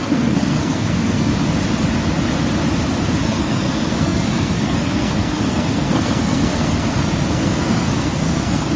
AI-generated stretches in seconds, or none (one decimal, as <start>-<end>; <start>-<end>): 0.0-1.3; 3.2-8.8